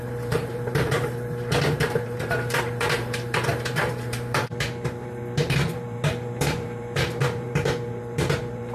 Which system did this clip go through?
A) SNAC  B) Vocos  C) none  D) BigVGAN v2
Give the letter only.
D